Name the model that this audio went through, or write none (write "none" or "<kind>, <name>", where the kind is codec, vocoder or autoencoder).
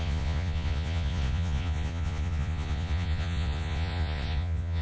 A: vocoder, Vocos